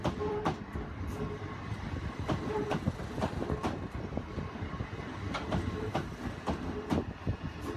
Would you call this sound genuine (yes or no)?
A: yes